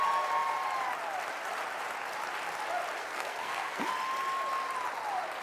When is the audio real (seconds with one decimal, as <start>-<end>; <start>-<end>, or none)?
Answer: 0.0-3.0; 3.9-5.4